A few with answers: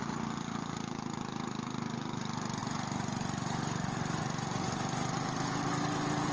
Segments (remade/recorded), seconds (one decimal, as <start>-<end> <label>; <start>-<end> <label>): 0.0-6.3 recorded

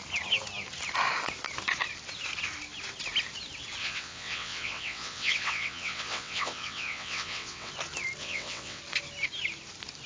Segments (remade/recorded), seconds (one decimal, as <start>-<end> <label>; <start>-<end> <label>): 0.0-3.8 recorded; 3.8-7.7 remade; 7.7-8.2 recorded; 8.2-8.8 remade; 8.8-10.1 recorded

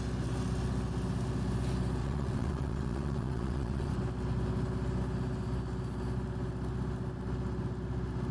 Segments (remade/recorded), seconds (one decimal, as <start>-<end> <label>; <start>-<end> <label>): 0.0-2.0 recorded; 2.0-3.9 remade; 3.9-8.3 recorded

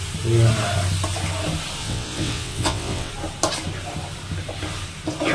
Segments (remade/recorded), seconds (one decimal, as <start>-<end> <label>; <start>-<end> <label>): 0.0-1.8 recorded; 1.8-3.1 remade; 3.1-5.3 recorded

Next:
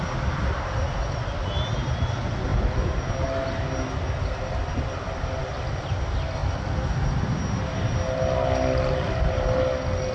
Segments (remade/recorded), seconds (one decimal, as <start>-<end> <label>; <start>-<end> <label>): 0.0-10.1 recorded

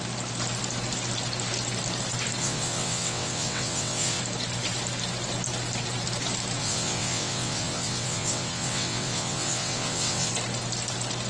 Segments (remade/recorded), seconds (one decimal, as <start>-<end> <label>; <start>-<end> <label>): 0.0-2.4 recorded; 2.4-4.2 remade; 4.2-6.6 recorded; 6.6-10.3 remade; 10.3-11.3 recorded

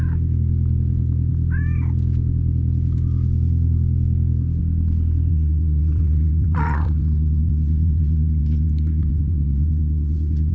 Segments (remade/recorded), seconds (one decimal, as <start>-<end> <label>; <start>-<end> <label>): 0.0-5.3 recorded; 5.3-10.5 remade